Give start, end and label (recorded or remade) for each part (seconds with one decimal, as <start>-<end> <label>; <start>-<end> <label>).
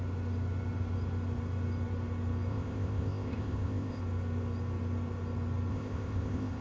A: 0.0-2.5 recorded; 2.5-4.0 remade; 4.0-5.7 recorded; 5.7-6.6 remade